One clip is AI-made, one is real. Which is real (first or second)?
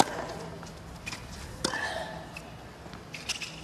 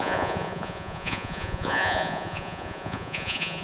first